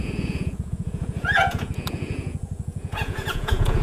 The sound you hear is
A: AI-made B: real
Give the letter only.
A